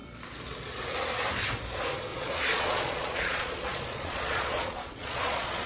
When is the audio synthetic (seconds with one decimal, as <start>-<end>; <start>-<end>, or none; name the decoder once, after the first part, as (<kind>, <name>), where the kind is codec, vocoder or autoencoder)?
2.1-5.7 (vocoder, Vocos)